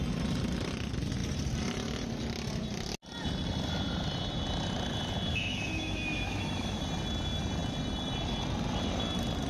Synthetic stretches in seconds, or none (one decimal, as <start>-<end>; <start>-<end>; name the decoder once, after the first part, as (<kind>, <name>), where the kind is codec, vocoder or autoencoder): 5.3-6.8 (autoencoder, DAC-VAE)